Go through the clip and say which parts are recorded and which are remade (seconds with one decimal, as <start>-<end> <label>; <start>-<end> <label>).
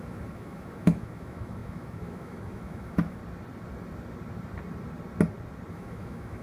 0.0-3.2 remade; 3.2-5.7 recorded; 5.7-6.4 remade